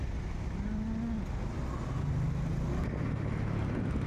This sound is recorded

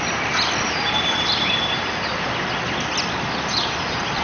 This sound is recorded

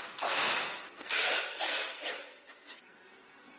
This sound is remade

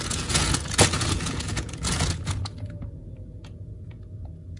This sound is remade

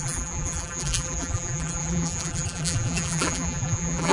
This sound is remade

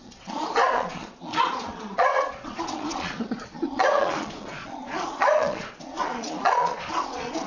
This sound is remade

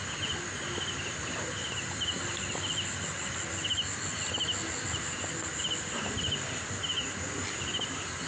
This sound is recorded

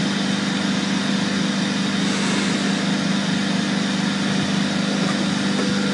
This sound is recorded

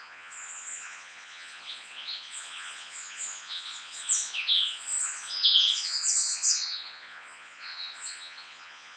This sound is remade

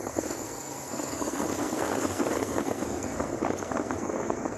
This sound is remade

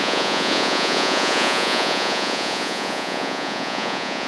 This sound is remade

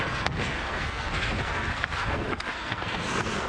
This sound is remade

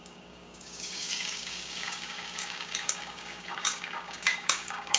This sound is remade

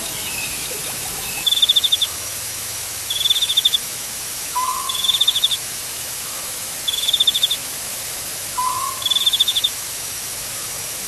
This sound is remade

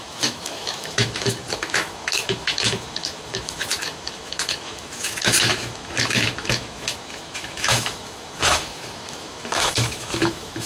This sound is remade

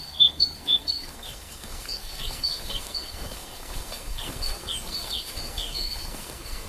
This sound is remade